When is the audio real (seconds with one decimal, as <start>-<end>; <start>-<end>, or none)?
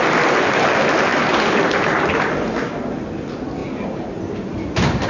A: 0.0-5.1